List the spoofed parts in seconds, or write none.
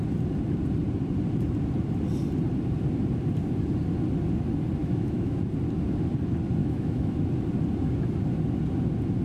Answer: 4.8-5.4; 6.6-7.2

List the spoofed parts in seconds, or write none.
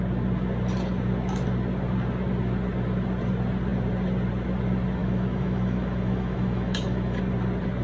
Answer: 5.0-7.2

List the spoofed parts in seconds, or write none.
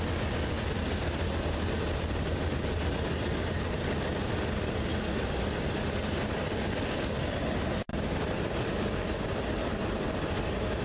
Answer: none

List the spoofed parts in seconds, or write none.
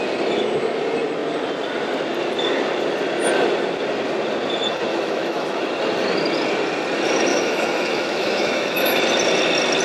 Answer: 4.9-5.6; 7.3-9.0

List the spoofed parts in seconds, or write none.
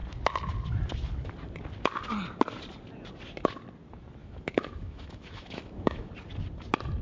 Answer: 4.2-6.1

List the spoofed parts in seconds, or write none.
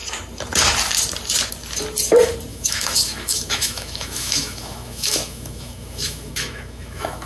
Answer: 2.5-7.3